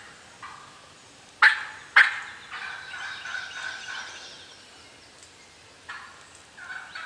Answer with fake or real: real